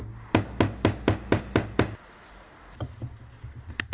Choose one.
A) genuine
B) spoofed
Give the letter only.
A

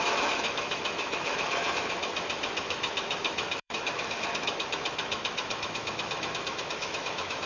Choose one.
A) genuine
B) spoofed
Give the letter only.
B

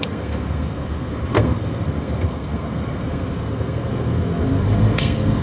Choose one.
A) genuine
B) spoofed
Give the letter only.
B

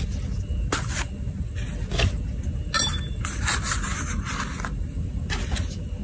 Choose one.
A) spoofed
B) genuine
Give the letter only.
B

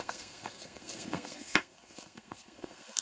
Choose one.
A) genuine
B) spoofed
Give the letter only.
B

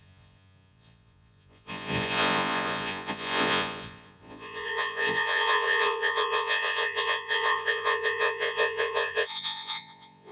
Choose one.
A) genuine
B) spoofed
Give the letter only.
B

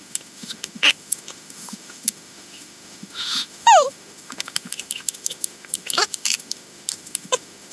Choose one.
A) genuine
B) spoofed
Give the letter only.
B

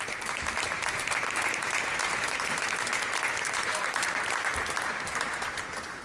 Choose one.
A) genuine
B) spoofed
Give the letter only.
B